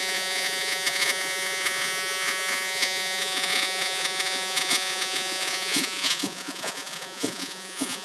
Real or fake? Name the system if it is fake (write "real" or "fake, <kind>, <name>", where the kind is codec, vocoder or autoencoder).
fake, vocoder, Vocos